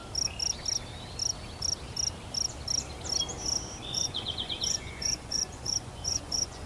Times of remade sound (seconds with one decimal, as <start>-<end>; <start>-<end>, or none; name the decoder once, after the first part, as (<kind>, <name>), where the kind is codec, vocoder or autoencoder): 3.8-6.7 (vocoder, Vocos)